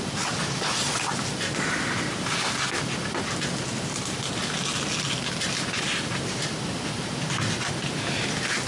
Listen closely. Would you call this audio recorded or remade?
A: remade